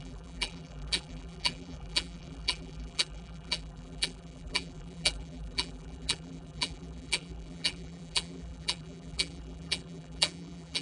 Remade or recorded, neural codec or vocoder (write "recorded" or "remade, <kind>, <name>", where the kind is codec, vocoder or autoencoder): remade, vocoder, BigVGAN v2